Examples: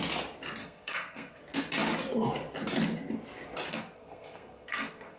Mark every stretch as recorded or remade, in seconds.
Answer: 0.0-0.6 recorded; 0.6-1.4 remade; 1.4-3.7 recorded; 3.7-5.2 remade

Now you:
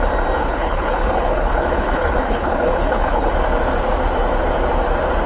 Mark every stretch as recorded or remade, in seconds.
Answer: 0.0-0.4 recorded; 0.4-3.3 remade; 3.3-5.3 recorded

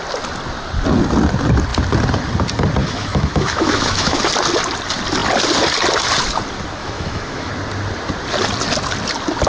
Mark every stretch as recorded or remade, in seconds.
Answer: 0.0-2.8 recorded; 2.8-4.2 remade; 4.2-6.8 recorded; 6.8-7.5 remade; 7.5-9.5 recorded

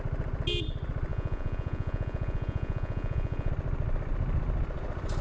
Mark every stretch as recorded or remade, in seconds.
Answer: 0.0-1.1 recorded; 1.1-3.5 remade; 3.5-5.2 recorded

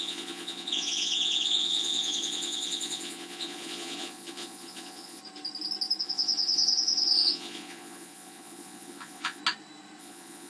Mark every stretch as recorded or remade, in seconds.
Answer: 0.0-5.2 remade; 5.2-6.0 recorded; 6.0-9.4 remade; 9.4-10.0 recorded; 10.0-10.5 remade

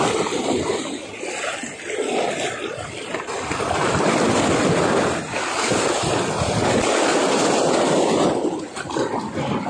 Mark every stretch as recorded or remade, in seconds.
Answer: 0.0-9.7 recorded

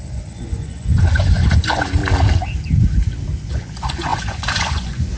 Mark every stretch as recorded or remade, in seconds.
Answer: 0.0-2.0 remade; 2.0-3.4 recorded; 3.4-5.2 remade